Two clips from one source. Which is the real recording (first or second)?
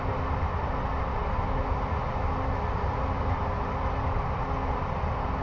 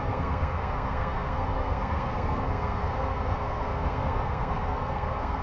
first